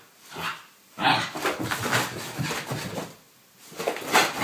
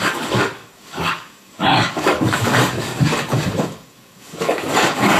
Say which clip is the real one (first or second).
first